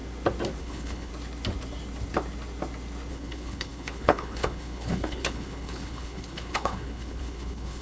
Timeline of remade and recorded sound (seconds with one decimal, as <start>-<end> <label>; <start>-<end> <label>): 0.0-0.6 recorded; 0.6-1.1 remade; 1.1-3.1 recorded; 3.1-7.8 remade